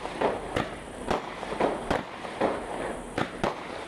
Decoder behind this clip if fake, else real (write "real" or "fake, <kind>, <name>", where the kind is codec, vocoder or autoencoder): fake, vocoder, BigVGAN v2